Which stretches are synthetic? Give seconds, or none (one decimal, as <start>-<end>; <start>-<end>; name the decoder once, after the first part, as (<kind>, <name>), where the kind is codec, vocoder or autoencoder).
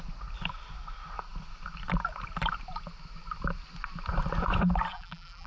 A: 4.9-5.5 (vocoder, BigVGAN v2)